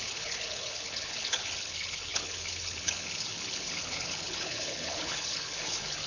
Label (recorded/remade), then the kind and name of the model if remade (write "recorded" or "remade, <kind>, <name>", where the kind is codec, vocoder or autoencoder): remade, codec, HILCodec